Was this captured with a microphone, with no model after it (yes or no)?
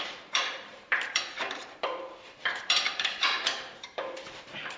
no